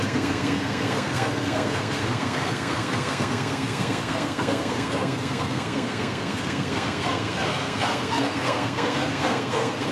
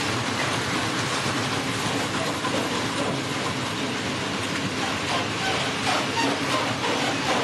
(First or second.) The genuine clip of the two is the second